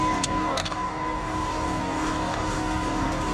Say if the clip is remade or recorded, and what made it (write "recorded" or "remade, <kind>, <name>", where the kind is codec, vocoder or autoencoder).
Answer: remade, codec, DAC